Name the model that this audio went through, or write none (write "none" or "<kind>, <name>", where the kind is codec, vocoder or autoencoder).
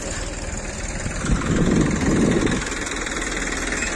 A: vocoder, BigVGAN v2